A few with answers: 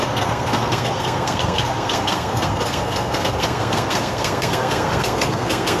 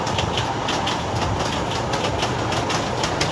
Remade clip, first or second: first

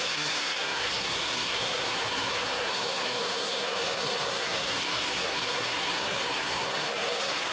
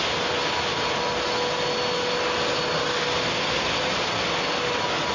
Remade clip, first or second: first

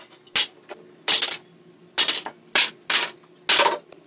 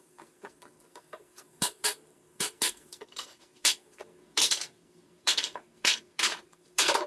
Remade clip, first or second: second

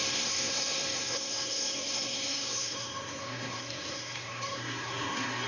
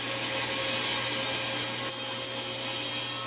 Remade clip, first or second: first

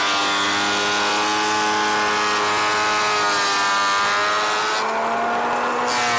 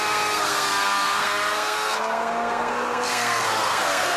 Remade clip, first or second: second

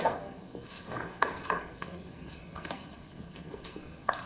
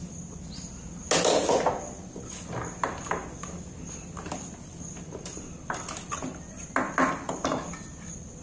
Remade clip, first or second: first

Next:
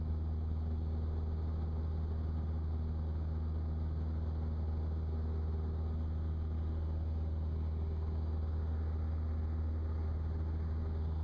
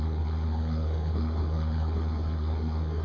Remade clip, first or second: second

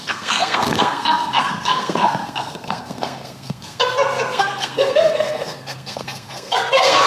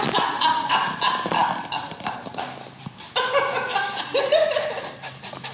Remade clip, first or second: first